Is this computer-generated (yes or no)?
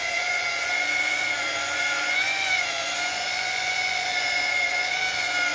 yes